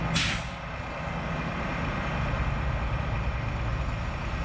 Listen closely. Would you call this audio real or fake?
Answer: real